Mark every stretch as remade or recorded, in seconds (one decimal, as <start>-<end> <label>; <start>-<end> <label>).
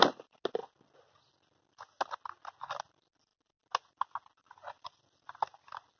0.0-6.0 recorded